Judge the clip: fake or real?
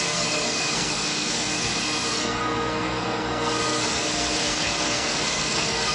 fake